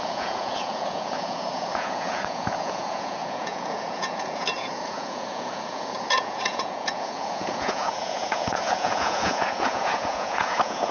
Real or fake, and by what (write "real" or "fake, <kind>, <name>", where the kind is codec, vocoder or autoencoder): fake, vocoder, Vocos